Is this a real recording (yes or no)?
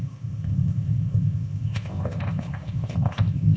no